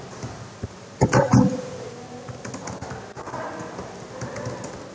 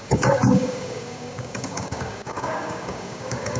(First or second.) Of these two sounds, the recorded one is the first